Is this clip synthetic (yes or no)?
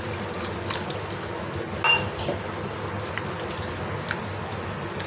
no